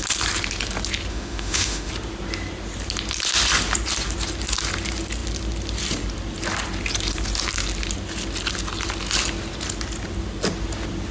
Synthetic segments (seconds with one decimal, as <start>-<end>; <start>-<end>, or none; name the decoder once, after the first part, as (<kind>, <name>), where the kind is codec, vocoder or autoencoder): 1.1-1.9 (autoencoder, DAC-VAE)